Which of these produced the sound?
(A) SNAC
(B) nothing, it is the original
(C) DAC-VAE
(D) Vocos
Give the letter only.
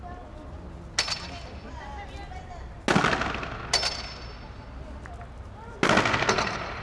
B